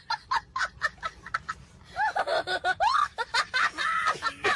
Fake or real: real